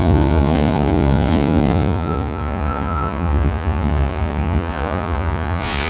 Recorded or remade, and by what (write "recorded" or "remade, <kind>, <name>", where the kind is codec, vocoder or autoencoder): remade, vocoder, Vocos